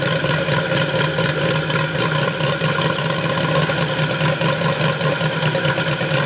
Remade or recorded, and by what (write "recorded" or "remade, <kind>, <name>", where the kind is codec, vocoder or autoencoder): recorded